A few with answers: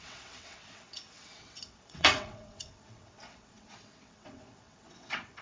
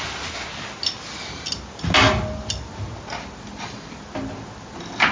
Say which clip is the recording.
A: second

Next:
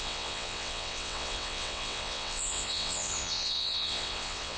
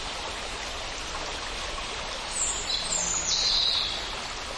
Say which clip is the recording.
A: second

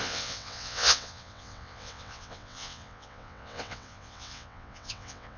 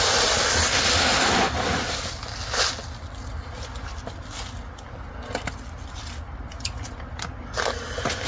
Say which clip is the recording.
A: second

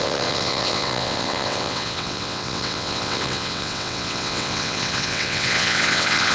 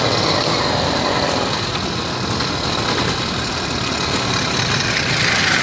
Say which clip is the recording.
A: second